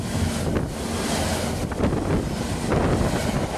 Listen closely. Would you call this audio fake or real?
real